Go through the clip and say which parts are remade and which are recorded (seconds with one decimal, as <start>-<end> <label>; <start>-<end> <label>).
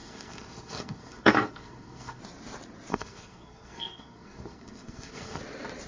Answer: 0.0-2.2 remade; 2.2-2.9 recorded; 2.9-5.4 remade; 5.4-5.9 recorded